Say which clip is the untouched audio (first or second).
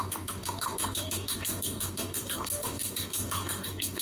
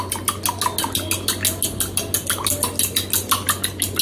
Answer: second